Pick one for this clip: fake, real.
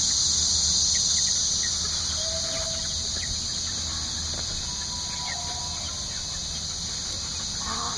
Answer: real